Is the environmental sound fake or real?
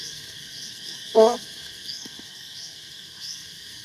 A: fake